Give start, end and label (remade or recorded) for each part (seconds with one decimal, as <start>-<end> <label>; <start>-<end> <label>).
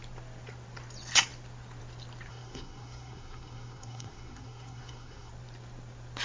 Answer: 0.0-2.3 recorded; 2.3-5.3 remade; 5.3-6.2 recorded